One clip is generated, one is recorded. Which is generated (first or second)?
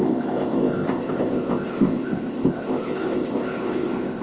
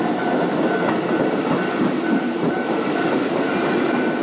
first